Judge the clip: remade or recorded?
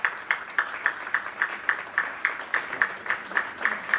recorded